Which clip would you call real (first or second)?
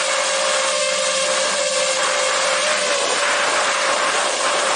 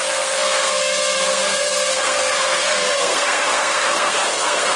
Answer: first